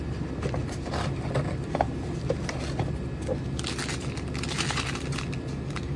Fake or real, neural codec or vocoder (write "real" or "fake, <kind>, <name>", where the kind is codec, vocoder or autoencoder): real